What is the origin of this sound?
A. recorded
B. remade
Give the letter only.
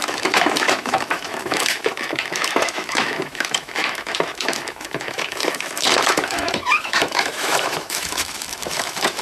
B